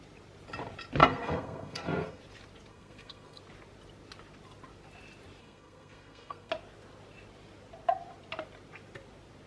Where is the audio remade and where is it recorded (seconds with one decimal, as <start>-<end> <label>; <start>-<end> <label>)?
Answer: 0.0-1.0 recorded; 1.0-2.2 remade; 2.2-2.7 recorded; 2.7-3.4 remade; 3.4-5.4 recorded; 5.4-6.5 remade; 6.5-9.5 recorded

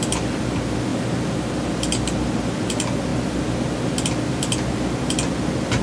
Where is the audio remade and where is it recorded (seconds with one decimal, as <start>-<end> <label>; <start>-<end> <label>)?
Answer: 0.0-5.8 recorded

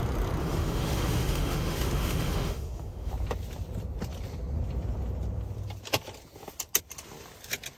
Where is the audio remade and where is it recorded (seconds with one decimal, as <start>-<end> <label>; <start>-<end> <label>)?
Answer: 0.0-0.4 recorded; 0.4-3.1 remade; 3.1-7.8 recorded